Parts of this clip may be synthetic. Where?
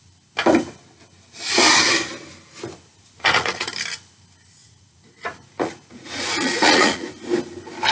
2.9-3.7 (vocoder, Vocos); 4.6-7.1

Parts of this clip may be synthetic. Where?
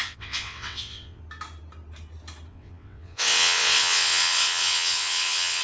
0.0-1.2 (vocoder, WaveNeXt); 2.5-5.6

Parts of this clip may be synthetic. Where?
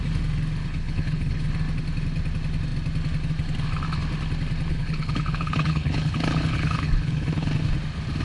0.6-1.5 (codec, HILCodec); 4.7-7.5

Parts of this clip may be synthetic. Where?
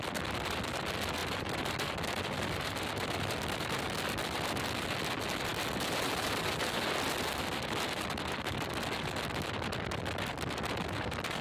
1.2-3.8 (vocoder, BigVGAN v2)